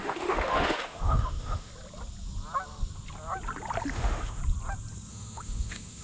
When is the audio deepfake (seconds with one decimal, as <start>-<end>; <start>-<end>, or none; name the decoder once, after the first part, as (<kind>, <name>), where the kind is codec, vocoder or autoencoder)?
0.0-1.7 (autoencoder, DAC-VAE); 3.9-4.4; 5.1-6.0